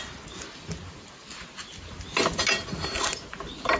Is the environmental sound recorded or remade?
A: recorded